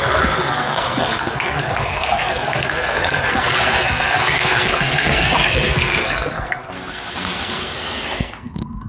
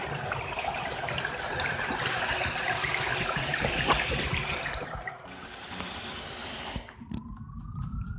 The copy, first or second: first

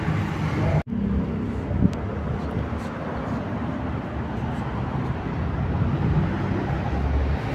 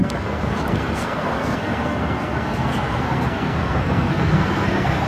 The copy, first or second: second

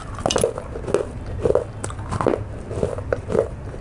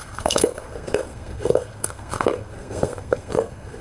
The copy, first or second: second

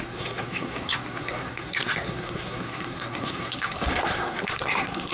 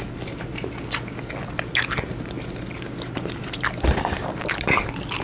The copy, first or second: first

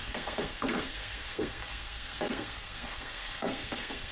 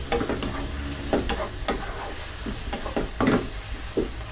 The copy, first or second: first